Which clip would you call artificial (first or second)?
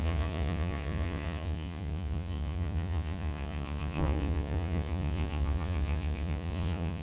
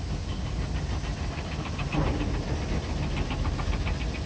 first